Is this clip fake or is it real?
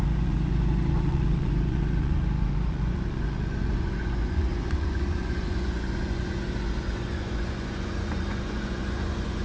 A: fake